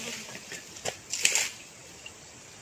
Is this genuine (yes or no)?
yes